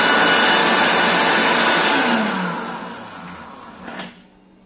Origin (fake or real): real